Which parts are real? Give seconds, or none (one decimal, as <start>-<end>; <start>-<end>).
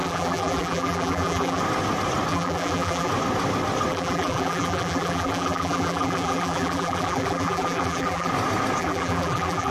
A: 1.6-2.3; 3.1-3.9; 8.3-8.8